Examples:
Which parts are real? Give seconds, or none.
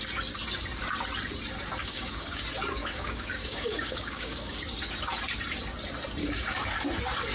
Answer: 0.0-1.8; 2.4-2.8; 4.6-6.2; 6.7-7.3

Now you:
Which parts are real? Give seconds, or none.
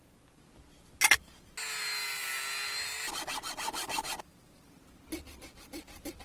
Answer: 0.0-6.2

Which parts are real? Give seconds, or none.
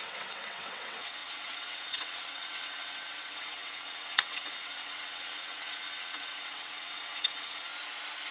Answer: 7.7-8.3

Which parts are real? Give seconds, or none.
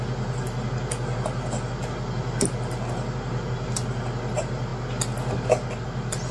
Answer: 0.0-6.3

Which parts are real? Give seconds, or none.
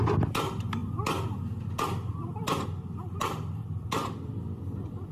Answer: 0.0-5.1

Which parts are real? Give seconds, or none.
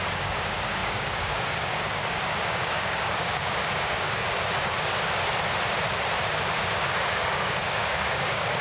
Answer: 4.3-7.0